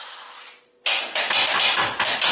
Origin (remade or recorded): recorded